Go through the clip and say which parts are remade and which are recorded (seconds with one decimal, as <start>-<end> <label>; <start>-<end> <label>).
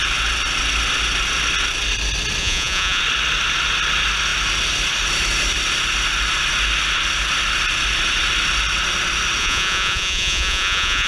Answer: 0.0-2.4 recorded; 2.4-3.0 remade; 3.0-9.4 recorded; 9.4-11.1 remade